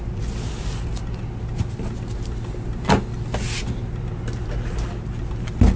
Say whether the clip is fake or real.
real